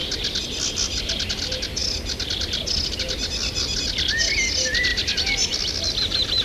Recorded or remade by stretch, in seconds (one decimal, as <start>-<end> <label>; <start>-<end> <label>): 0.0-6.4 recorded